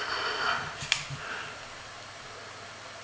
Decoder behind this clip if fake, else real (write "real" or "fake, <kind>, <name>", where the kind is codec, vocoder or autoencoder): real